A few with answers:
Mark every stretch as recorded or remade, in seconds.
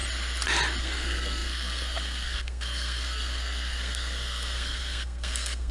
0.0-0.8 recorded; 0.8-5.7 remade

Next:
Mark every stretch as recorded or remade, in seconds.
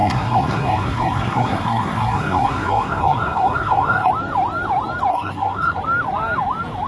0.0-4.1 remade; 4.1-5.1 recorded; 5.1-5.8 remade; 5.8-6.9 recorded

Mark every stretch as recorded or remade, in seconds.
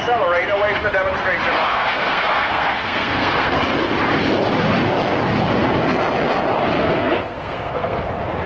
0.0-1.7 recorded; 1.7-3.6 remade; 3.6-6.8 recorded; 6.8-8.0 remade; 8.0-8.5 recorded